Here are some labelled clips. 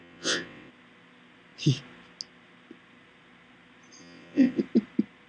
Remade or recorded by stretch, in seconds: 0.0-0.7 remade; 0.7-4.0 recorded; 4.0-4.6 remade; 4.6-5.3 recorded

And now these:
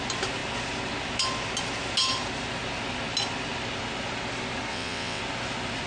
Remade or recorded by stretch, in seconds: 0.0-4.7 recorded; 4.7-5.2 remade; 5.2-5.9 recorded

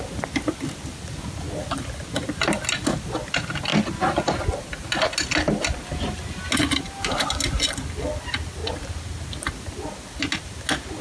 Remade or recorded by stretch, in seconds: 0.0-11.0 recorded

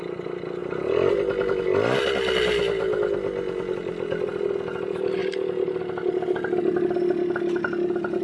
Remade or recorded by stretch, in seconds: 0.0-8.2 recorded